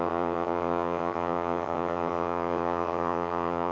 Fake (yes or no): yes